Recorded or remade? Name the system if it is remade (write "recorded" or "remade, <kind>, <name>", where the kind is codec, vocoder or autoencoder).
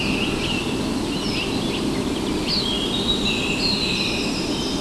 recorded